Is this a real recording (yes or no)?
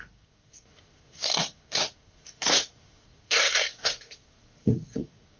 no